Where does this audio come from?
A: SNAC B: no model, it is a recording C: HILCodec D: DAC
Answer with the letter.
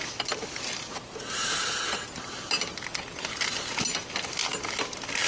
B